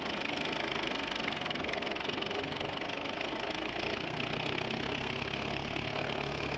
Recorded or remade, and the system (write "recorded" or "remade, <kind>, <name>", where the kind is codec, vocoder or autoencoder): remade, codec, SNAC